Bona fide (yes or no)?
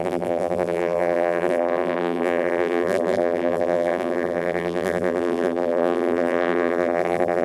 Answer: no